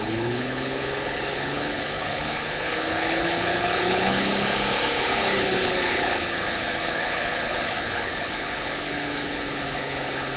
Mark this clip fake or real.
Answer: fake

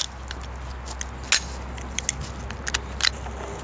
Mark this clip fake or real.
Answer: real